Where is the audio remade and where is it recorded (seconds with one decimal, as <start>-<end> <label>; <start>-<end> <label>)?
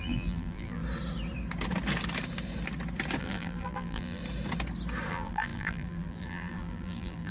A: 0.0-0.8 remade; 0.8-3.2 recorded; 3.2-4.2 remade; 4.2-5.1 recorded; 5.1-7.3 remade